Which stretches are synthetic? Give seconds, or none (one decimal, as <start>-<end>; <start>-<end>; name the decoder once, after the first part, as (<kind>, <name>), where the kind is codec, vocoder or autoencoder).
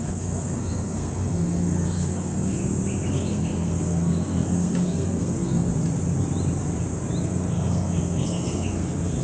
0.0-2.6 (codec, SNAC); 3.1-5.7; 7.2-9.2